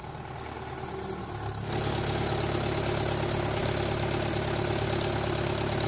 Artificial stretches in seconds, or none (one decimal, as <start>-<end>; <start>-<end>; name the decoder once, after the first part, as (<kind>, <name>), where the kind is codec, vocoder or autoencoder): none